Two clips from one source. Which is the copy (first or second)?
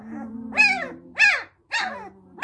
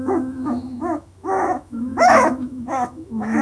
second